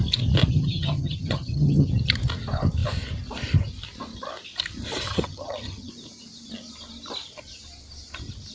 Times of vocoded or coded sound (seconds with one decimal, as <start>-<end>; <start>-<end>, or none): 0.5-1.9; 5.1-5.9